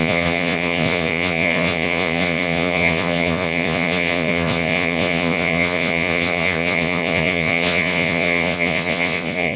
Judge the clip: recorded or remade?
remade